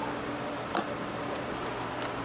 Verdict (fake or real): real